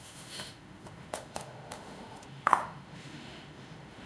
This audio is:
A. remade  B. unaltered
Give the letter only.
A